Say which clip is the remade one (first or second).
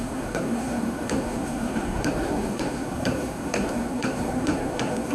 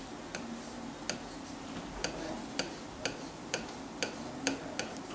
first